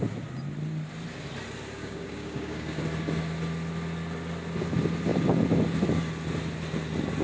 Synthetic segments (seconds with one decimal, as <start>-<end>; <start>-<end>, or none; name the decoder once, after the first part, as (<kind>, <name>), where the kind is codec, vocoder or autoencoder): 1.8-2.8 (codec, DAC)